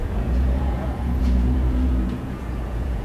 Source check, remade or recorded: remade